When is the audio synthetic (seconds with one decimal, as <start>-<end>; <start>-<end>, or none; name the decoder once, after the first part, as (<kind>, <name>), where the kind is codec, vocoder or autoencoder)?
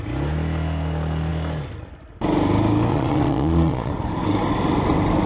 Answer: 2.9-3.9 (vocoder, Vocos)